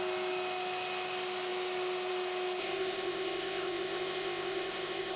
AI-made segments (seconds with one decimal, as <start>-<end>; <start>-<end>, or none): 2.6-5.2